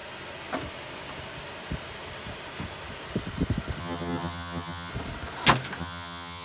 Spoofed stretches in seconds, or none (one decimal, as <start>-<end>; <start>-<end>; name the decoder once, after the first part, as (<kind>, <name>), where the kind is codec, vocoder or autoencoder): 3.8-4.9 (vocoder, HiFi-GAN); 5.8-6.4